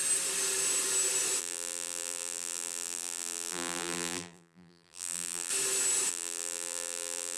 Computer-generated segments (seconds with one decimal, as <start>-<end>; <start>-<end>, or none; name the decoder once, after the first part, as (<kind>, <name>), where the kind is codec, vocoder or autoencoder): 1.4-5.5 (vocoder, BigVGAN v2); 6.1-7.4